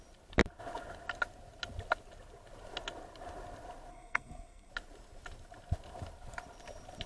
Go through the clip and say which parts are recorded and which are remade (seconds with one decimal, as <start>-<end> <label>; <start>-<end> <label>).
0.0-3.9 recorded; 3.9-4.7 remade; 4.7-7.1 recorded